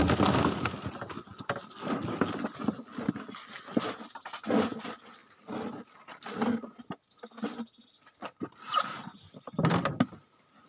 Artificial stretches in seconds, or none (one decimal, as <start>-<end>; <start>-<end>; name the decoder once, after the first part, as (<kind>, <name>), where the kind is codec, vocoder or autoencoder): none